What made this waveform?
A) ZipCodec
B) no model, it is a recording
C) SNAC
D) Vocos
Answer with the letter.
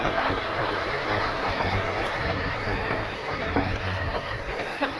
C